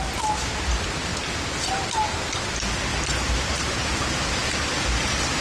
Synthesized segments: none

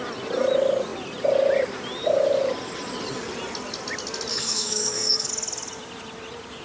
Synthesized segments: 4.3-5.3 (codec, SNAC)

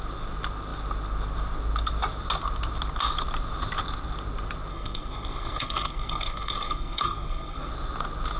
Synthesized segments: 4.7-7.7 (codec, SNAC)

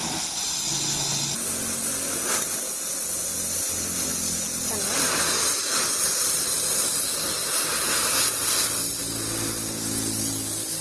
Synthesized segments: none